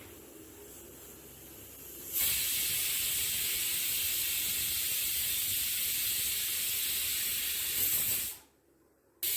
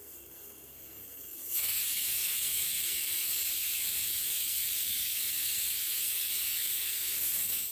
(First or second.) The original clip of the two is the first